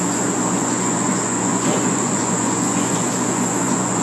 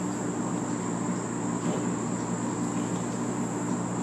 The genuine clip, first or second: second